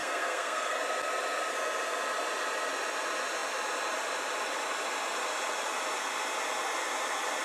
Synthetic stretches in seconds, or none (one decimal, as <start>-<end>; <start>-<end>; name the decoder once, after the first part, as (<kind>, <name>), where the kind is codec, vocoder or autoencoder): 0.0-0.8 (codec, SNAC)